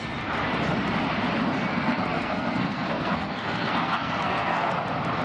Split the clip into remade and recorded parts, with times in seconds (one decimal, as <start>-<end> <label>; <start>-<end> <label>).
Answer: 0.0-1.7 recorded; 1.7-4.7 remade; 4.7-5.2 recorded